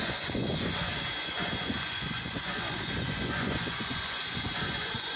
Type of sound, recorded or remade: remade